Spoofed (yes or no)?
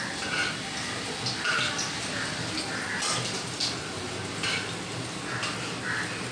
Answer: no